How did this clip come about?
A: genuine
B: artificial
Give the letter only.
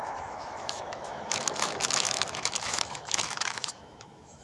B